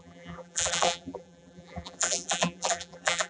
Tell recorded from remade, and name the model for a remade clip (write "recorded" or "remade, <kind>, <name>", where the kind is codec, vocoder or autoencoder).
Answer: remade, vocoder, BigVGAN v2